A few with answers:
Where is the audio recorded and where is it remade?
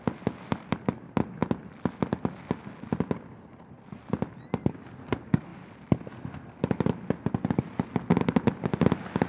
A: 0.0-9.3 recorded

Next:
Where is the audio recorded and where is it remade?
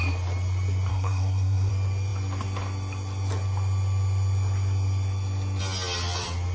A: 0.0-0.9 recorded; 0.9-1.7 remade; 1.7-6.5 recorded